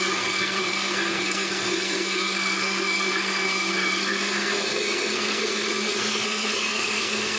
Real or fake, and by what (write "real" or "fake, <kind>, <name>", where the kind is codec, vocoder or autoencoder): fake, codec, SNAC